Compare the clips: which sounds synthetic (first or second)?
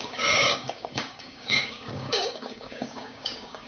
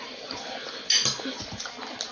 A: first